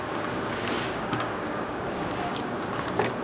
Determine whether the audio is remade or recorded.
remade